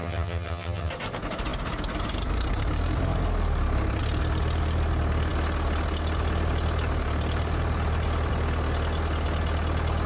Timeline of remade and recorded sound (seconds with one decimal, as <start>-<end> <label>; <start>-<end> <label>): 0.0-0.9 remade; 0.9-10.1 recorded